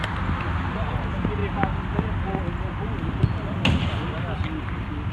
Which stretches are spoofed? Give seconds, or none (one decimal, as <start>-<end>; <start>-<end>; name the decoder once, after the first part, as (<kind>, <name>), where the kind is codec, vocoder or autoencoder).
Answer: none